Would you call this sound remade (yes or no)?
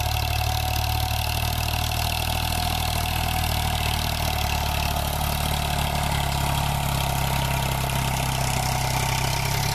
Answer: no